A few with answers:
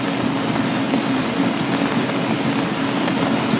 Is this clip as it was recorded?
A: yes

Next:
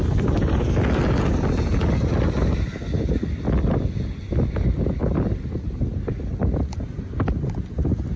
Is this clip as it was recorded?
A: yes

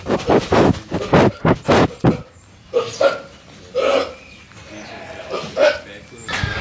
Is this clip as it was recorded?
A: yes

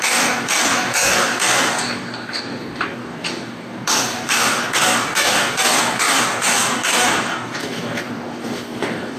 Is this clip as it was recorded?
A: no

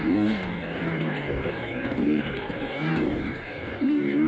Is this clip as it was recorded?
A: no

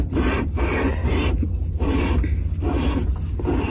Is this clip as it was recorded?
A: yes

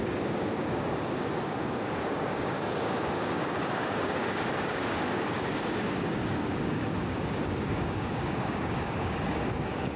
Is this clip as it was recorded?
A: no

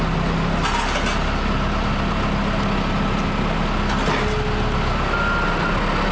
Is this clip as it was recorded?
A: yes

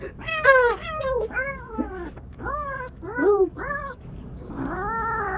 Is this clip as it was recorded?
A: no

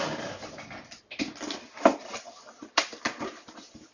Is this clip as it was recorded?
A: yes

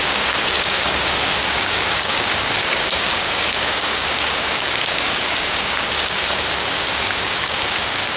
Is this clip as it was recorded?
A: no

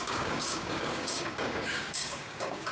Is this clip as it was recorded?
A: no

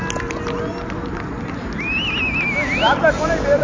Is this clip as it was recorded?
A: yes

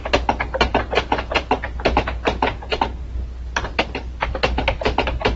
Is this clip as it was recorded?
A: yes